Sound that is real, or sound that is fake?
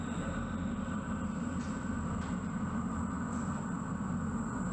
real